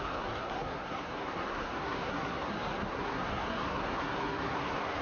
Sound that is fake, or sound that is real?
fake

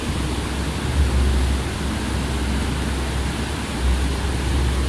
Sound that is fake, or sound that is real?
real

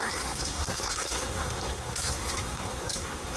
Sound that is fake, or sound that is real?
fake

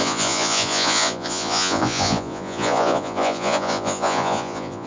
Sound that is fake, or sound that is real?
fake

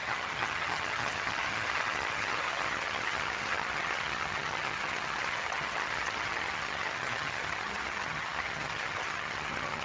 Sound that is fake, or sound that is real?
fake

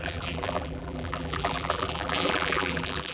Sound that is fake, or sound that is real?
fake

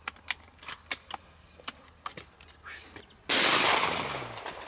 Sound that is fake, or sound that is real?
real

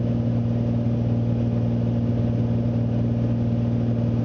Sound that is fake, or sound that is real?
real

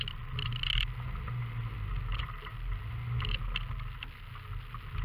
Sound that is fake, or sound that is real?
real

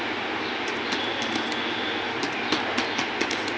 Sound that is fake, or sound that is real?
real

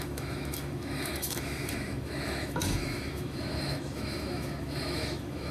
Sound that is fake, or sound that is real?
fake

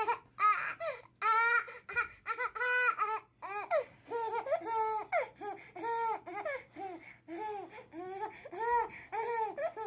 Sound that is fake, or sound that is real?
real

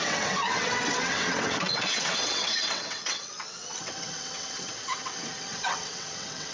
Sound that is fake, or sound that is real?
fake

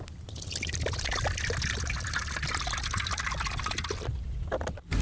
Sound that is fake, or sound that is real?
real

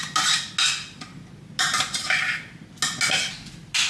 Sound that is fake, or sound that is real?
real